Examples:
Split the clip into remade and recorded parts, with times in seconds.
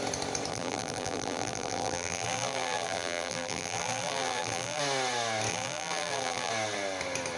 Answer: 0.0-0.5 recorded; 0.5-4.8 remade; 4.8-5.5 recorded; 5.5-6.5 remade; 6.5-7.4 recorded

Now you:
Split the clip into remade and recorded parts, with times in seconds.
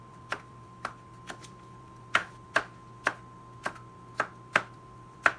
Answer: 0.0-2.2 remade; 2.2-4.5 recorded; 4.5-5.4 remade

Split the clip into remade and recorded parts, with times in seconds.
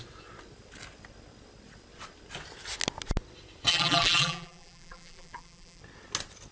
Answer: 0.0-3.7 recorded; 3.7-5.8 remade; 5.8-6.5 recorded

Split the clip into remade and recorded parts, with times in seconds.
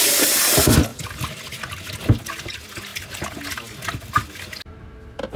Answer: 0.0-5.4 recorded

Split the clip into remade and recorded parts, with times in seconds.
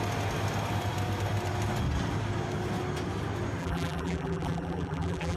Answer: 0.0-3.6 recorded; 3.6-5.4 remade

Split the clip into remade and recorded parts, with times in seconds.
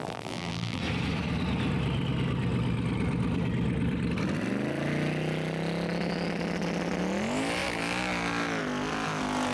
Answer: 0.0-0.8 remade; 0.8-9.5 recorded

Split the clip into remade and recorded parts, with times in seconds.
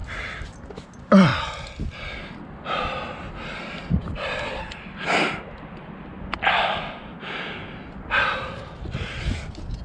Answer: 0.0-9.8 recorded